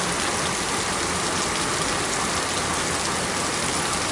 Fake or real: real